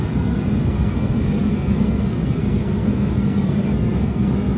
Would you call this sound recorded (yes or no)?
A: no